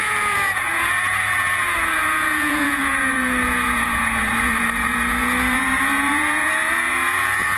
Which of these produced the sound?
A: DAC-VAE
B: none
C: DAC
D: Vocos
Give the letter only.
D